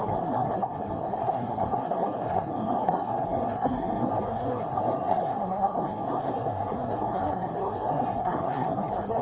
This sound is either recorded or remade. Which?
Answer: remade